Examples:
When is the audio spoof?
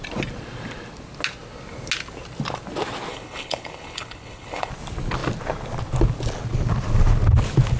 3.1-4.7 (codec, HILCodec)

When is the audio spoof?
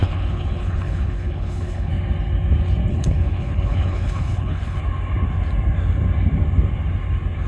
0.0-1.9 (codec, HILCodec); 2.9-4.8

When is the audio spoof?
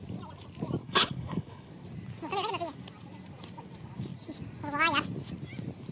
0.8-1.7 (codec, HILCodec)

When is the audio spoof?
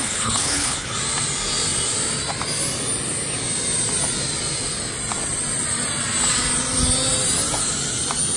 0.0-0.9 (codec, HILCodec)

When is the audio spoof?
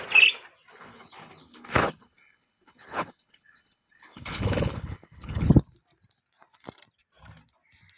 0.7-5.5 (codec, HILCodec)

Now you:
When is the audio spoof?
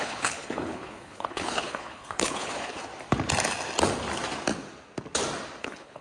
0.0-2.9 (codec, HILCodec); 5.6-6.0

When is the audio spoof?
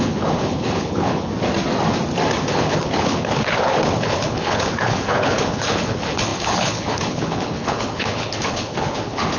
0.0-1.3 (codec, HILCodec); 2.5-9.4